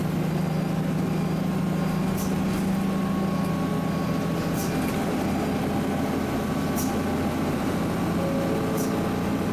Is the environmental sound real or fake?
real